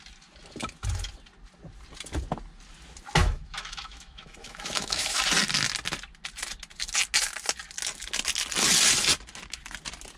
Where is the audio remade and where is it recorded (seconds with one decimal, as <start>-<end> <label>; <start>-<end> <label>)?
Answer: 0.0-3.2 recorded; 3.2-5.2 remade; 5.2-10.2 recorded